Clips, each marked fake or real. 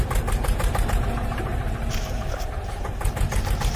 fake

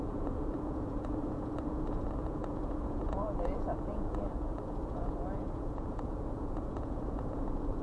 fake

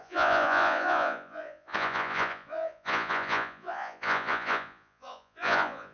fake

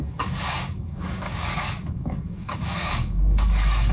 fake